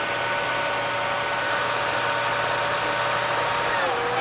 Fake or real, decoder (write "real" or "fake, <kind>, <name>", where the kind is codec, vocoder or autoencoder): real